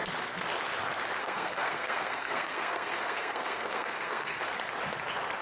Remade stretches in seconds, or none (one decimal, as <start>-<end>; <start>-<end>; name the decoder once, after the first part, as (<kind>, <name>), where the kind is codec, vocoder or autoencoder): 1.2-4.4 (codec, SNAC)